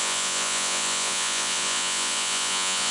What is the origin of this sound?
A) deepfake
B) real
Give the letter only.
A